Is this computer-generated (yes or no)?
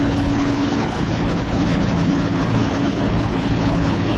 yes